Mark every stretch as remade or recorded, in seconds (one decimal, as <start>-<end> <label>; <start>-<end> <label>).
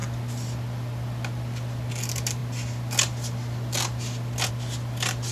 0.0-5.3 recorded